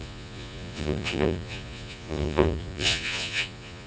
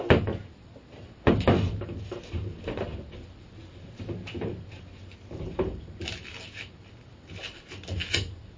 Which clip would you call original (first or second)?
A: second